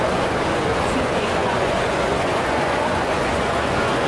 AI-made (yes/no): yes